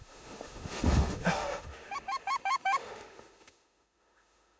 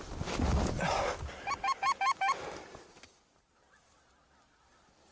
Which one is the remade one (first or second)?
first